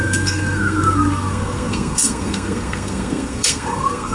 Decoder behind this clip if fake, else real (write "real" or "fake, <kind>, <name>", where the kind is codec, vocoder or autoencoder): fake, codec, SNAC